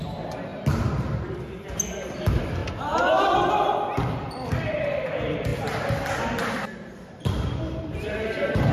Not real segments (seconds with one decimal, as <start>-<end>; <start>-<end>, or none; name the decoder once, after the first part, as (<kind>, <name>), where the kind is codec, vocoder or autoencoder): 0.0-0.5 (vocoder, BigVGAN v2); 2.1-2.6; 4.3-5.5; 6.2-8.7